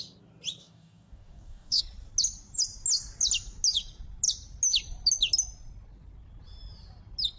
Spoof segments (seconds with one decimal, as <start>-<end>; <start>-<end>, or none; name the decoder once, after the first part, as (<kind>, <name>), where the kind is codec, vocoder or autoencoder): 0.6-1.8 (codec, DAC)